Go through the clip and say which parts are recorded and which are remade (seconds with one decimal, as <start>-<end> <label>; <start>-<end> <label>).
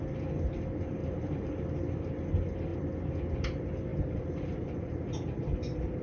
0.0-1.0 recorded; 1.0-1.7 remade; 1.7-3.9 recorded; 3.9-4.4 remade; 4.4-6.0 recorded